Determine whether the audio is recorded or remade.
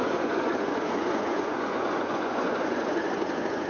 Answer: remade